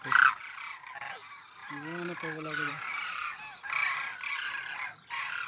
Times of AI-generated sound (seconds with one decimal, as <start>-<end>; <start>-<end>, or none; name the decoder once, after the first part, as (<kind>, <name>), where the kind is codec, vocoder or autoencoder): none